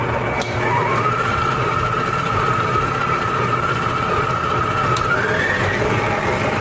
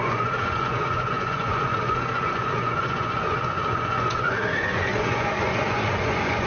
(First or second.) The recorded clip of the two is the first